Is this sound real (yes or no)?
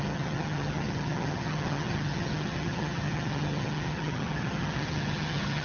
no